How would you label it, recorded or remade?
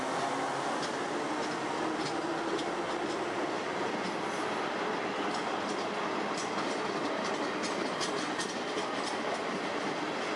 recorded